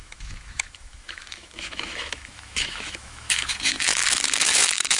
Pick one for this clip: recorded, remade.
remade